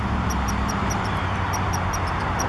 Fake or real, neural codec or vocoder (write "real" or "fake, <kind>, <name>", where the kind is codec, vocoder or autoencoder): fake, vocoder, BigVGAN v2